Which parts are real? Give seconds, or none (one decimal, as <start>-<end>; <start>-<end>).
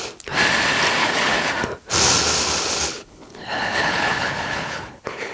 0.0-1.0; 1.5-2.9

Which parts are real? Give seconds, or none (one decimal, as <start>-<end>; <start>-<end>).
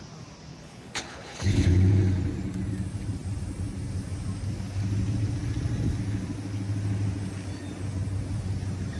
0.0-0.5; 1.9-9.0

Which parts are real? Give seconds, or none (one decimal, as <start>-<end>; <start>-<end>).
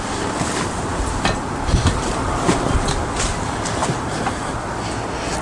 0.0-5.4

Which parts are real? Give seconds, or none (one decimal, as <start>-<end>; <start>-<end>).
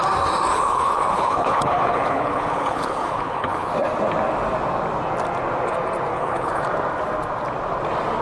0.0-0.5; 3.7-6.1; 6.6-8.2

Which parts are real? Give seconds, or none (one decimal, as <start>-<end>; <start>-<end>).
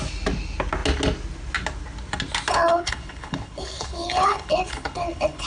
0.0-2.5